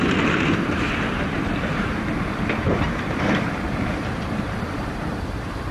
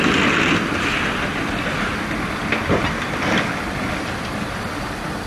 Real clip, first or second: second